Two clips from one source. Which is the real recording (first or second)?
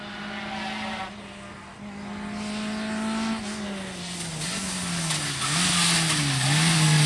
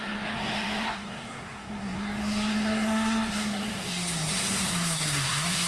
first